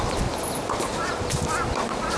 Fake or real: real